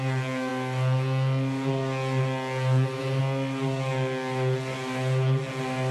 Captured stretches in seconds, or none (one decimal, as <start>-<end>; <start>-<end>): 0.0-5.9